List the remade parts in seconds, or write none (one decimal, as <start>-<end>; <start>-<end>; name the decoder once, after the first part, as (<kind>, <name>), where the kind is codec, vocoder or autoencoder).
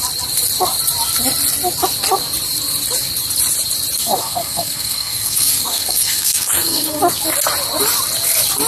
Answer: 4.0-7.0 (codec, SNAC)